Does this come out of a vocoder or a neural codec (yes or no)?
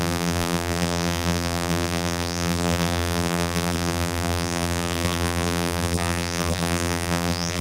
yes